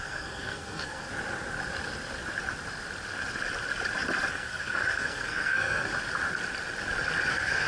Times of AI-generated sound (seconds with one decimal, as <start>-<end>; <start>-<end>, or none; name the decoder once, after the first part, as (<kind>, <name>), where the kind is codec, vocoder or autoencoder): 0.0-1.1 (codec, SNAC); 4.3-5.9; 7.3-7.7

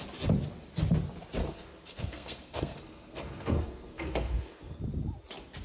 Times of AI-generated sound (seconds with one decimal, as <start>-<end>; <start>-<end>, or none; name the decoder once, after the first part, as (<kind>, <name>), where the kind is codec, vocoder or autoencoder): 1.4-4.8 (codec, SNAC)

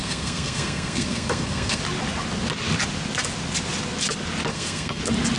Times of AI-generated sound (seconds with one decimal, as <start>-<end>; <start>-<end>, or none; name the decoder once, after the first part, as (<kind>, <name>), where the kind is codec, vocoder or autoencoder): 0.0-1.8 (codec, SNAC); 4.5-5.0